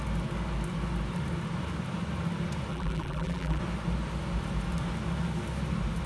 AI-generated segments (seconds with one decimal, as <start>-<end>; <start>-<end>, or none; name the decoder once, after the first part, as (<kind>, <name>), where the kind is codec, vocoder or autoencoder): 2.7-3.6 (vocoder, BigVGAN v2)